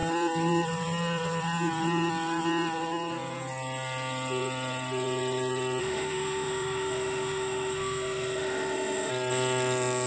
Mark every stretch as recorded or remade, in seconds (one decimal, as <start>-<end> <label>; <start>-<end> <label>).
0.0-5.8 recorded; 5.8-9.1 remade; 9.1-10.1 recorded